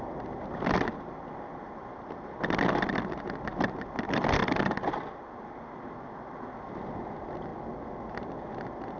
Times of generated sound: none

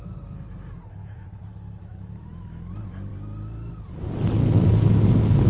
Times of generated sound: 1.0-2.7 (autoencoder, DAC-VAE)

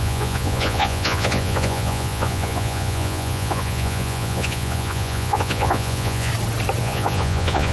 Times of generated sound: 0.0-6.3 (vocoder, Vocos); 6.8-7.7

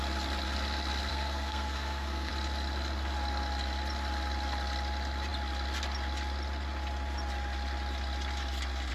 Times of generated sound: 1.1-2.3 (codec, SNAC)

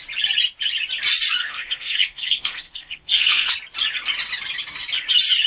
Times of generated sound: 1.4-3.5 (codec, SNAC)

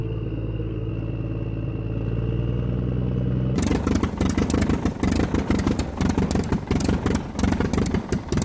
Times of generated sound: 0.0-0.9 (codec, SNAC)